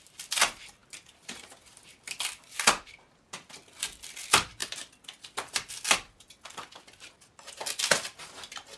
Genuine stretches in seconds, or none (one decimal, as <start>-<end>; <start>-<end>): 0.0-8.8